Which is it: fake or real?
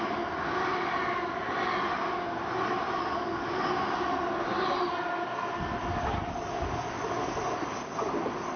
real